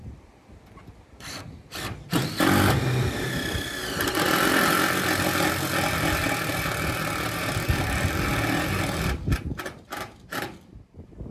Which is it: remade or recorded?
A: recorded